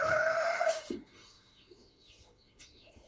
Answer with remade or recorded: remade